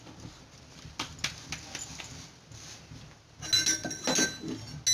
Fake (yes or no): no